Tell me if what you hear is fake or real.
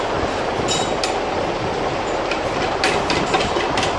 real